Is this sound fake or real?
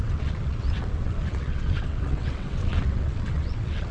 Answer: fake